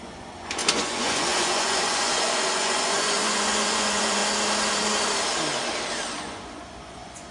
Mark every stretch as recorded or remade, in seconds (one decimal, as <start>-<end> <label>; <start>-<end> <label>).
0.0-4.2 remade; 4.2-6.2 recorded; 6.2-7.3 remade